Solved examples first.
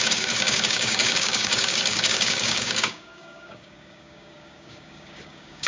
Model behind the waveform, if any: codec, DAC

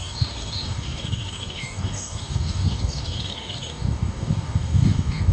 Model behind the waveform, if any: codec, DAC